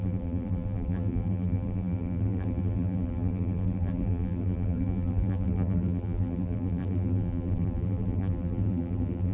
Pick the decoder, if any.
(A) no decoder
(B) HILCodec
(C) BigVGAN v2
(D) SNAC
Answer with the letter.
C